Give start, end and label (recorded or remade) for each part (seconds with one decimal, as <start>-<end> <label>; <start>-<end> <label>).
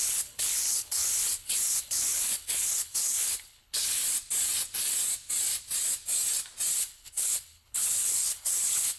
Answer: 0.0-4.0 remade; 4.0-6.7 recorded; 6.7-9.0 remade